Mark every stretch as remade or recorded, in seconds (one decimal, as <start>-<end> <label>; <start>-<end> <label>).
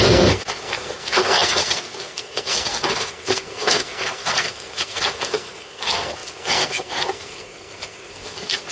0.0-8.7 remade